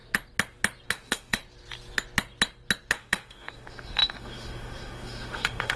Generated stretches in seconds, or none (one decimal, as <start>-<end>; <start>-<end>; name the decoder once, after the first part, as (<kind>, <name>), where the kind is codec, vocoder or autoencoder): 0.9-1.4 (autoencoder, DAC-VAE); 2.9-5.8